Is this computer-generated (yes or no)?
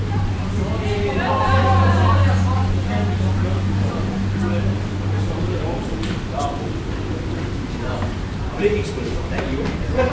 no